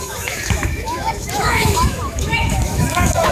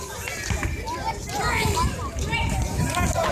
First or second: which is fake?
first